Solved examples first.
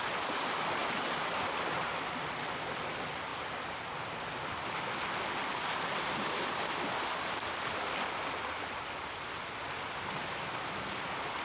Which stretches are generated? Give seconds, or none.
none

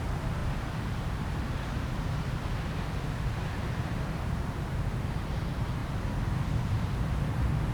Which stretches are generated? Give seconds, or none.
0.0-5.8 (vocoder, BigVGAN v2); 6.4-7.7